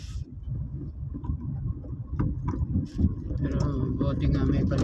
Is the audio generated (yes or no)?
no